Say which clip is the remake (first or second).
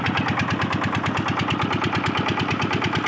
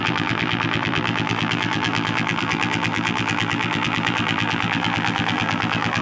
second